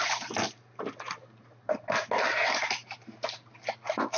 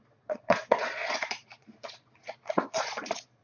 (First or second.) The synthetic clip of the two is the second